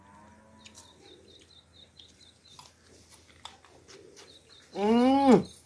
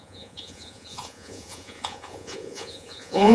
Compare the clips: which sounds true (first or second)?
first